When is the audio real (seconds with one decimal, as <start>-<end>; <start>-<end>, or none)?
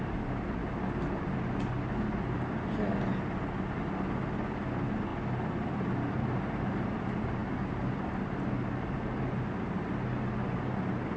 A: 0.0-11.2